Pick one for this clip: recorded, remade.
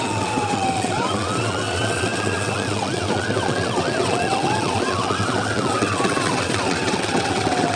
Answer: remade